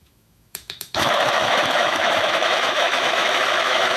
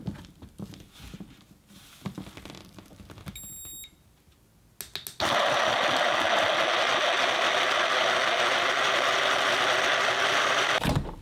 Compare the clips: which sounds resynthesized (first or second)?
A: first